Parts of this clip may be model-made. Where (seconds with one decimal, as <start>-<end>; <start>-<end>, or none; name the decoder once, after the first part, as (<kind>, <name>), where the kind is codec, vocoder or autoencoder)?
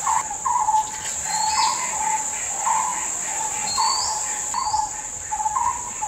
none